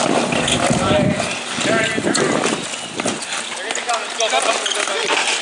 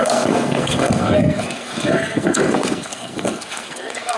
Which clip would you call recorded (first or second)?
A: first